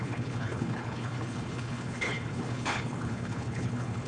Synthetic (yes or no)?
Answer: yes